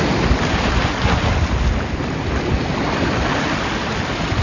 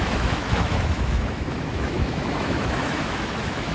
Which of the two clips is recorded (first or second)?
first